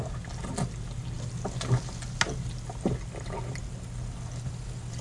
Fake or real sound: real